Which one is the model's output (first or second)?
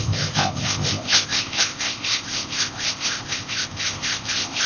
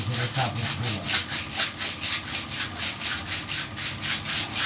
first